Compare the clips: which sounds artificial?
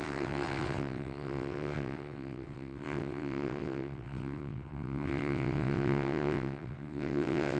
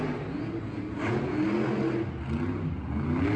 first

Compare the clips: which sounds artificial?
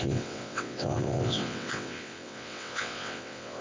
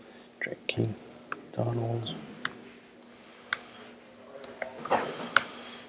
first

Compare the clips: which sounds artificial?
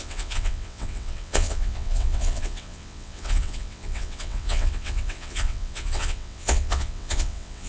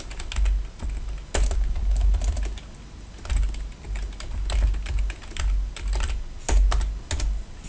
first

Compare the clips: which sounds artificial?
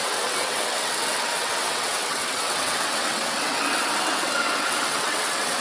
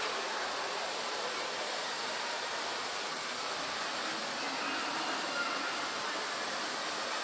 first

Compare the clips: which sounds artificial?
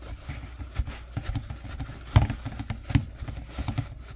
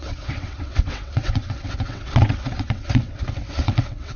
second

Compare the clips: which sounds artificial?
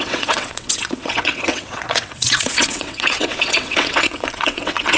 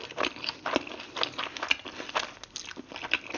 first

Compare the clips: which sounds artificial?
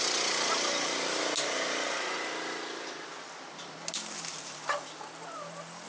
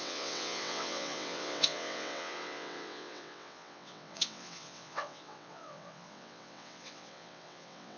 second